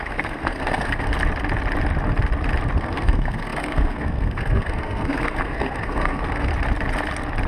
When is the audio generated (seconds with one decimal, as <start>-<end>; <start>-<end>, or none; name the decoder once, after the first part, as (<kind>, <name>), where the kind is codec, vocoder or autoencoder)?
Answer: 0.0-1.1 (codec, SNAC); 2.8-6.5